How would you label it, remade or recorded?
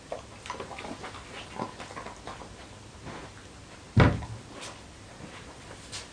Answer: recorded